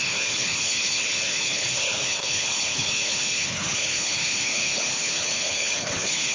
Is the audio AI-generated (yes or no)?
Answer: yes